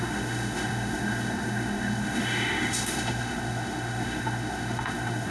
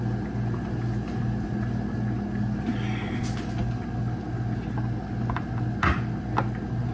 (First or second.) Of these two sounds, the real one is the second